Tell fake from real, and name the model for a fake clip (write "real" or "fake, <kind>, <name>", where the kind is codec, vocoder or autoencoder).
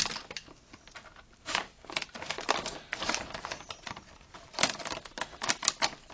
real